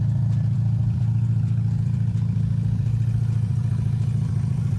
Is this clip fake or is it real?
fake